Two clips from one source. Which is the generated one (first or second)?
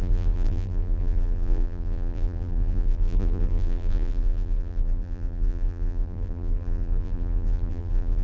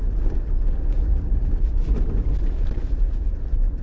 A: first